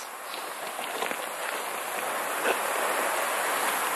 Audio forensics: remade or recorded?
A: recorded